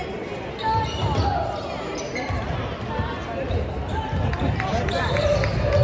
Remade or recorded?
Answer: recorded